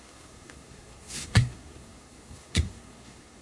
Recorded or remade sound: remade